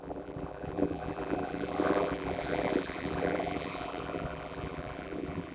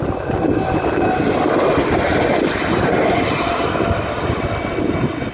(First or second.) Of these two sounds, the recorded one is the second